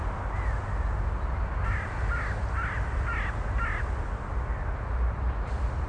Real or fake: real